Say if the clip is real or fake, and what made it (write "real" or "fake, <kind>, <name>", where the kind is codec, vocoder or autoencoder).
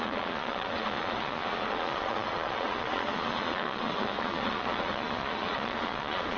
fake, vocoder, Vocos